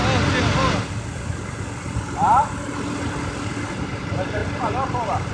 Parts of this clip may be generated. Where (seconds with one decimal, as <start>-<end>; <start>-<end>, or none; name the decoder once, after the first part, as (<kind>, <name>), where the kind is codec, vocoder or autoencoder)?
none